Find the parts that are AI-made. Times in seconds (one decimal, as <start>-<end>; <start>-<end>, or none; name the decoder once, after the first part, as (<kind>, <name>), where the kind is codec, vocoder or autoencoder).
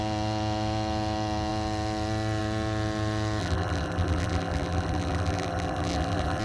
3.4-6.4 (vocoder, BigVGAN v2)